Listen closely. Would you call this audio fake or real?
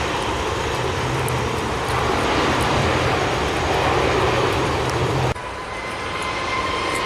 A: fake